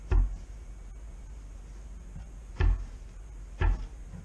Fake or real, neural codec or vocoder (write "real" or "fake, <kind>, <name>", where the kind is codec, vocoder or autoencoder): real